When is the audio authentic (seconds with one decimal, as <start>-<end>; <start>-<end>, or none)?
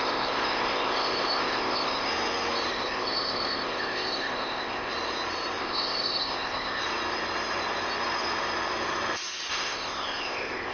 2.1-2.7; 4.9-5.6; 6.8-9.5